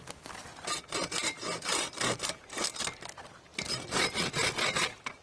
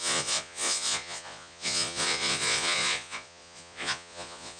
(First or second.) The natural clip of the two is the first